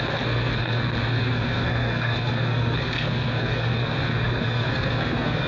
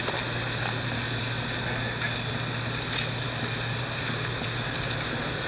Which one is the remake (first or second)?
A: first